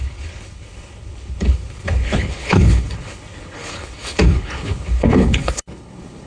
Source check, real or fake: fake